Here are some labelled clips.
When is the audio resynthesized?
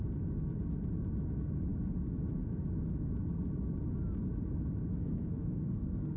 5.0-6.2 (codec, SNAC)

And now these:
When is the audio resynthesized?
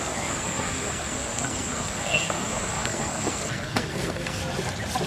0.0-4.4 (codec, SNAC)